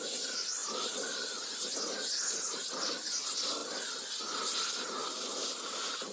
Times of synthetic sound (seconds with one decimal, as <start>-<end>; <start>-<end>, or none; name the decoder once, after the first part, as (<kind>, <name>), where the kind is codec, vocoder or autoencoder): 0.6-1.8 (vocoder, BigVGAN v2)